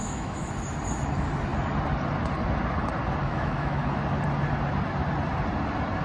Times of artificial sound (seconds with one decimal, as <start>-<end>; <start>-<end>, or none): 0.0-0.5; 3.2-4.0